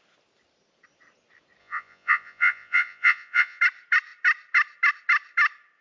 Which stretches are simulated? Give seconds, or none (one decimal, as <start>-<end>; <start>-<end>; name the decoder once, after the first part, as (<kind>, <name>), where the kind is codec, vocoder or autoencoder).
1.6-3.6 (vocoder, Vocos)